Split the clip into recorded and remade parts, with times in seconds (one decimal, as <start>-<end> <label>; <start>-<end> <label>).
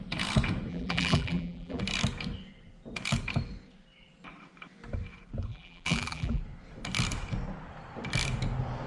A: 0.0-0.7 recorded; 0.7-1.8 remade; 1.8-5.5 recorded; 5.5-6.4 remade; 6.4-8.9 recorded